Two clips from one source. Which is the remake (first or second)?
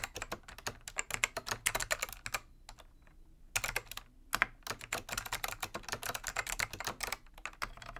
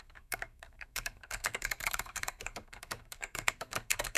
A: second